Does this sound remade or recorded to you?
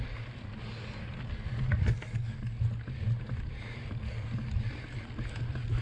recorded